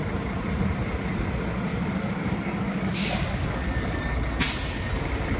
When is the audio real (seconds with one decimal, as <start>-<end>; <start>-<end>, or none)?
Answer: 0.0-1.7; 4.0-5.4